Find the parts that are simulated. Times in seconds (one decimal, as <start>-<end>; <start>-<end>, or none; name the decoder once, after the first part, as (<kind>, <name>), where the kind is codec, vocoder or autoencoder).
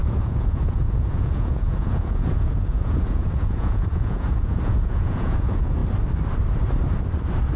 0.0-5.8 (vocoder, Vocos)